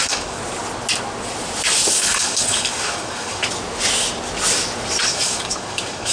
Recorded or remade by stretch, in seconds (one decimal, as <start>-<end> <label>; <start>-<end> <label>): 0.0-0.4 remade; 0.4-1.9 recorded; 1.9-3.4 remade; 3.4-5.0 recorded; 5.0-6.1 remade